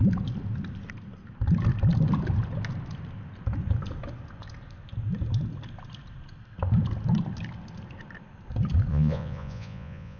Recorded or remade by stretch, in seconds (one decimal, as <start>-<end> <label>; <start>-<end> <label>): 0.0-8.9 recorded; 8.9-10.2 remade